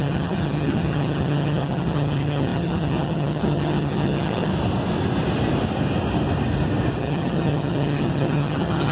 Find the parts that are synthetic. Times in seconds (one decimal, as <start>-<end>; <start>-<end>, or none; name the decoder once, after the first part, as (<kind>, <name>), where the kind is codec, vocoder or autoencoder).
0.0-4.5 (vocoder, HiFi-GAN); 7.0-8.9

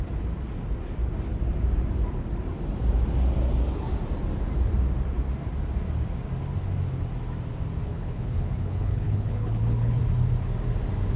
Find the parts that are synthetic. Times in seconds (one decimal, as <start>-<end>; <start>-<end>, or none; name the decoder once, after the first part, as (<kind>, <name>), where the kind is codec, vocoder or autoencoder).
7.8-10.0 (codec, HILCodec)